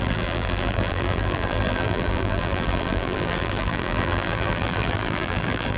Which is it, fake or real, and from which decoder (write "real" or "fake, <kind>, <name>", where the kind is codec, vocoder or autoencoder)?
fake, vocoder, BigVGAN v2